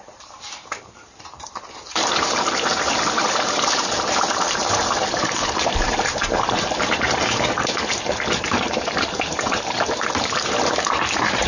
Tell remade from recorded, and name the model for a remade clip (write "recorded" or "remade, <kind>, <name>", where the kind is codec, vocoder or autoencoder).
remade, vocoder, BigVGAN v2